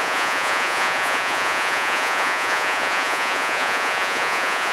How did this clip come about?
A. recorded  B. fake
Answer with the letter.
B